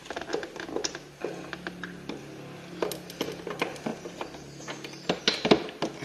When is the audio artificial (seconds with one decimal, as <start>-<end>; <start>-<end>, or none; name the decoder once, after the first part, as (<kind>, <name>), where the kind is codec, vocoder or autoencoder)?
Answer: none